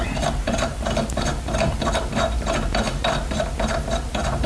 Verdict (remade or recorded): remade